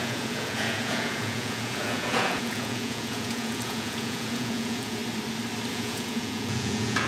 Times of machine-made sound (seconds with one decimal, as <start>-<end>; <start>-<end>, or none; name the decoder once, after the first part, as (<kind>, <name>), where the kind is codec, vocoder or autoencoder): 0.0-5.0 (vocoder, Vocos); 5.7-7.1